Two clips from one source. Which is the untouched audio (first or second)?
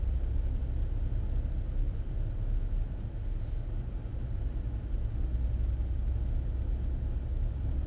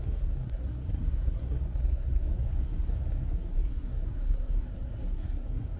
first